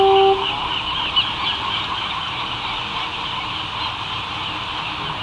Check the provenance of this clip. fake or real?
real